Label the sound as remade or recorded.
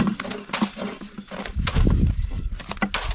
recorded